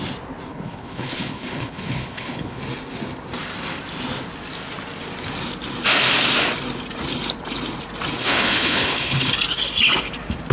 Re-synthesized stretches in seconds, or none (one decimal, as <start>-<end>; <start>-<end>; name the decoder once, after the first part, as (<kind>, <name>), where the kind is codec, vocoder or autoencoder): 0.5-2.6 (codec, HILCodec); 8.2-9.3